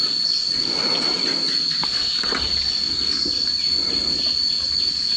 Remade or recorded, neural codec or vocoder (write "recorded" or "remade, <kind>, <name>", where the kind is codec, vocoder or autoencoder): recorded